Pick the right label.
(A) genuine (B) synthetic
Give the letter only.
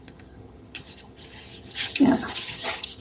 B